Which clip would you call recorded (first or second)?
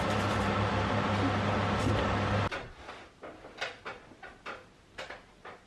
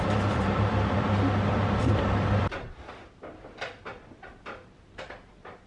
first